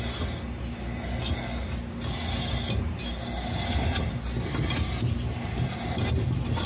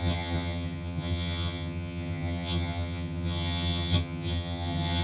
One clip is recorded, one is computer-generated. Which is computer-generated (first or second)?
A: second